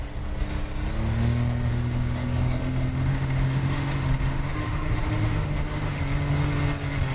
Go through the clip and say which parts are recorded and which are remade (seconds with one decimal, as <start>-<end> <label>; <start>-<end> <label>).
0.0-1.7 recorded; 1.7-6.0 remade; 6.0-7.1 recorded